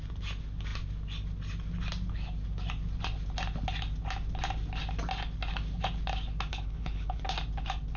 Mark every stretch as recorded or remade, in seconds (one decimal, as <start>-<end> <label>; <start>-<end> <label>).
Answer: 0.0-6.5 recorded; 6.5-7.2 remade; 7.2-8.0 recorded

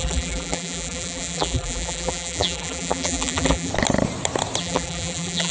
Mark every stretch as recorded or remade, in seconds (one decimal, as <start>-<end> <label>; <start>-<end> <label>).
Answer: 0.0-3.7 remade; 3.7-4.6 recorded; 4.6-5.5 remade

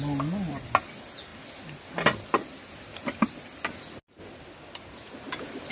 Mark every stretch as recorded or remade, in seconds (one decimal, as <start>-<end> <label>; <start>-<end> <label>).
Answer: 0.0-5.7 recorded

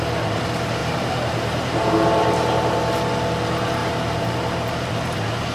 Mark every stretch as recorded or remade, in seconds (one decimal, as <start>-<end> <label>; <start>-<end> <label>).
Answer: 0.0-0.8 recorded; 0.8-2.9 remade; 2.9-3.8 recorded; 3.8-4.9 remade; 4.9-5.5 recorded

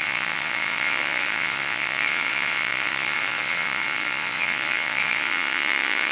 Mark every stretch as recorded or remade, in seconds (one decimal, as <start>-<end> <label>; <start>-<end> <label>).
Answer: 0.0-6.1 remade

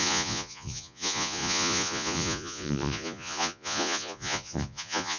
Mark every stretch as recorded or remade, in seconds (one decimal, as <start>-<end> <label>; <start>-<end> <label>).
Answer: 0.0-5.2 remade